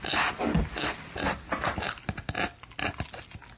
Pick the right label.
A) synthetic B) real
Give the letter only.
B